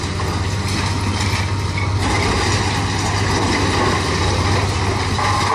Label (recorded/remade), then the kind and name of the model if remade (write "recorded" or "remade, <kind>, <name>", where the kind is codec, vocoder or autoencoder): recorded